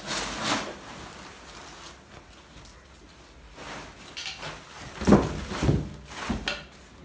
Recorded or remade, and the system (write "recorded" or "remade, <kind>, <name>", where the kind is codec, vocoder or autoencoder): recorded